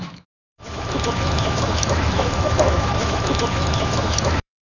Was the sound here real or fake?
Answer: fake